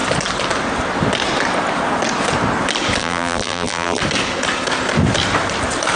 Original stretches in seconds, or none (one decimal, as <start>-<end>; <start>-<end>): 0.0-3.0; 4.0-6.0

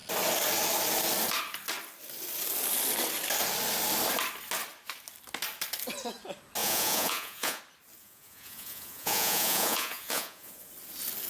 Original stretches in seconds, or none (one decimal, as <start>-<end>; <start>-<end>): 0.0-6.6; 7.6-8.0; 10.7-11.3

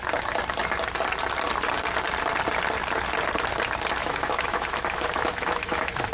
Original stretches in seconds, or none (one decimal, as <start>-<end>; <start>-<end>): 0.0-4.0

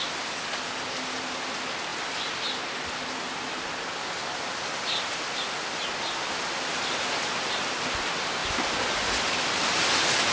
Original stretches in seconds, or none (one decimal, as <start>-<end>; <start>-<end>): 0.0-10.3

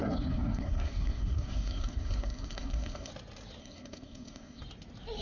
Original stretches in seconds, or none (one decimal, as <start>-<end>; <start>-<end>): 3.1-3.6; 4.6-5.2

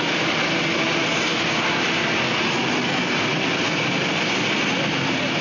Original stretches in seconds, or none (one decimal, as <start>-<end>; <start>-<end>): 0.0-5.4

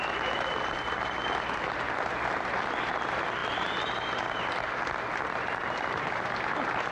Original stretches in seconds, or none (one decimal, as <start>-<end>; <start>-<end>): 0.0-6.9